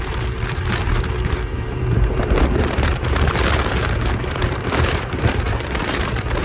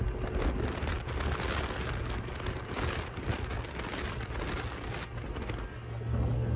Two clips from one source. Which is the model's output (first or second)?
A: first